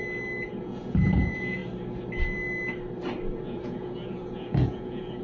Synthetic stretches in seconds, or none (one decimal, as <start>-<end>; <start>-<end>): 0.6-1.6; 3.4-5.2